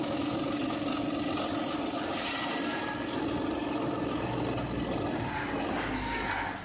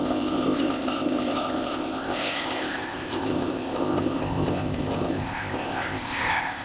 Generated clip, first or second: second